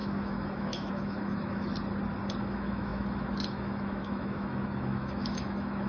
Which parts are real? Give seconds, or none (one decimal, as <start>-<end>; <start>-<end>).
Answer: 1.7-2.4